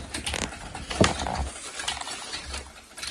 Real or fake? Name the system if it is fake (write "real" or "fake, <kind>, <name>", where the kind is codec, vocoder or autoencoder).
real